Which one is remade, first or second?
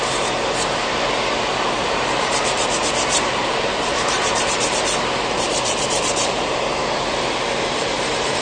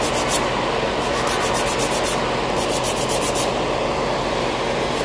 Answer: first